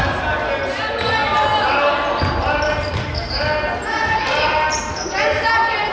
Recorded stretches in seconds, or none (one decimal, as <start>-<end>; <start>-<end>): 0.0-5.9